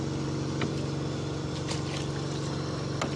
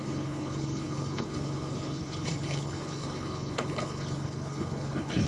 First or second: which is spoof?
second